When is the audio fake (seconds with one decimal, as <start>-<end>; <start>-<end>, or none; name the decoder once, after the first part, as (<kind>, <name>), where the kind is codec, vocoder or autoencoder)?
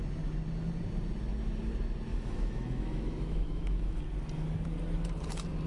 2.1-4.0 (autoencoder, DAC-VAE)